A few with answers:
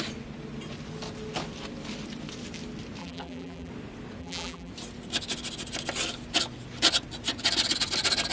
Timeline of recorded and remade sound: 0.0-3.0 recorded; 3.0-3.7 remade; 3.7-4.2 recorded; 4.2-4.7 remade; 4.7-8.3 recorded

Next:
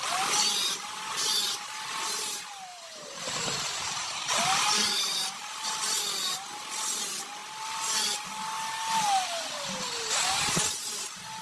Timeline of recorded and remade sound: 0.0-2.7 recorded; 2.7-5.2 remade; 5.2-11.4 recorded

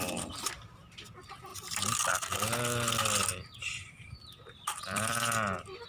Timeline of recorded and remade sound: 0.0-1.5 recorded; 1.5-2.1 remade; 2.1-3.3 recorded; 3.3-4.0 remade; 4.0-4.7 recorded; 4.7-5.2 remade; 5.2-5.9 recorded